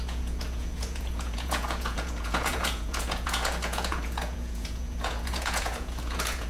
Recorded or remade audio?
remade